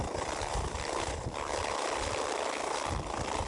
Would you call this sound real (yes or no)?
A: yes